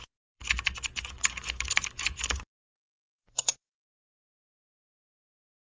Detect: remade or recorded remade